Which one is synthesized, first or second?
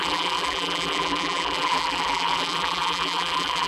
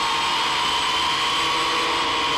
first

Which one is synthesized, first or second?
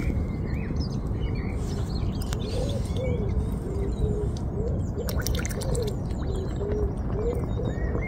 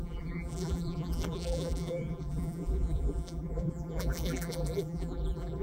second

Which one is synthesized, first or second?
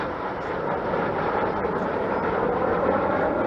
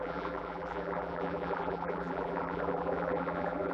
second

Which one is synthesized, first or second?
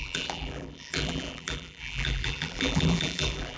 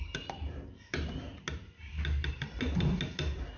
first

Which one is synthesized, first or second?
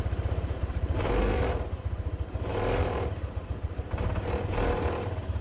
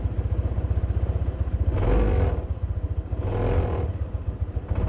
first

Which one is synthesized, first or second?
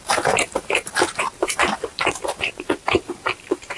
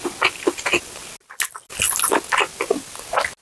first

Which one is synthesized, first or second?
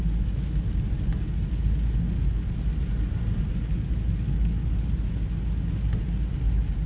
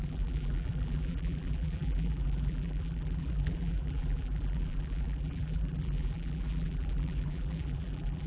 second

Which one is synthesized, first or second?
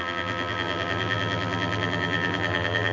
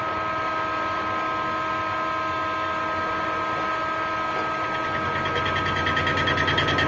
first